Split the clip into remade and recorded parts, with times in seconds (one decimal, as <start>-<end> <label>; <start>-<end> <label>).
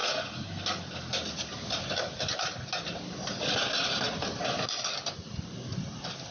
0.0-6.3 recorded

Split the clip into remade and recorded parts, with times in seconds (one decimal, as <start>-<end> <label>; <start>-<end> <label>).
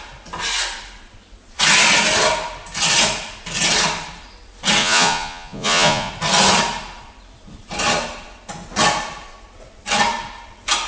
0.0-4.8 recorded; 4.8-6.1 remade; 6.1-10.9 recorded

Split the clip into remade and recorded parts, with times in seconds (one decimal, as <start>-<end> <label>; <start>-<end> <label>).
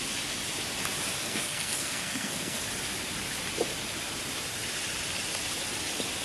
0.0-1.2 recorded; 1.2-2.6 remade; 2.6-6.2 recorded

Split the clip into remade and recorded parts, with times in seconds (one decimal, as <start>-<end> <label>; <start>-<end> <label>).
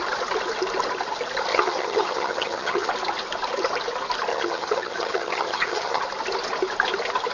0.0-1.5 recorded; 1.5-2.9 remade; 2.9-4.3 recorded; 4.3-6.0 remade; 6.0-7.3 recorded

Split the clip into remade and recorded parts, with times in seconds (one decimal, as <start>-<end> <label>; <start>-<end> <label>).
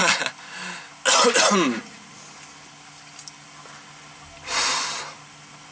0.0-5.7 recorded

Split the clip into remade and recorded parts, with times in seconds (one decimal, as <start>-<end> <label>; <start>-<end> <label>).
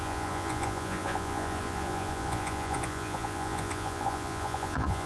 0.0-5.1 remade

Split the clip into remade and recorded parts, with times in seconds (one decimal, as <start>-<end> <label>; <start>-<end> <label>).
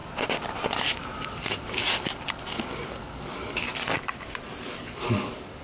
0.0-0.8 recorded; 0.8-1.8 remade; 1.8-2.6 recorded; 2.6-3.7 remade; 3.7-4.6 recorded; 4.6-5.6 remade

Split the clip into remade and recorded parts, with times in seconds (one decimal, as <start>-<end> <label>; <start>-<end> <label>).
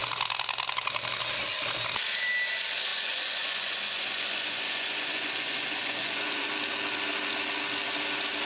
0.0-2.9 recorded; 2.9-6.5 remade; 6.5-8.4 recorded